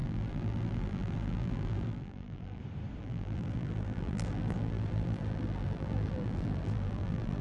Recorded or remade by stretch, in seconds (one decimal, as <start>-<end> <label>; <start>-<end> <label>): 0.0-2.6 remade; 2.6-3.0 recorded; 3.0-7.4 remade